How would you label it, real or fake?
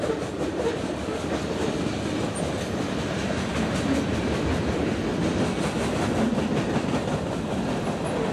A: real